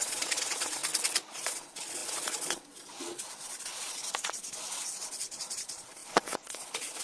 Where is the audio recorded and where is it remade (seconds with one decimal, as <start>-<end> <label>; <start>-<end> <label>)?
0.0-0.8 remade; 0.8-1.3 recorded; 1.3-7.0 remade